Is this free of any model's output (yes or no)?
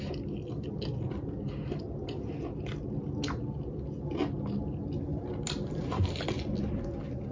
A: yes